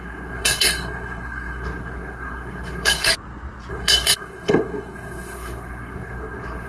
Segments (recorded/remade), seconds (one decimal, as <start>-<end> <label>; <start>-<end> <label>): 0.0-3.1 remade; 3.1-3.7 recorded; 3.7-6.7 remade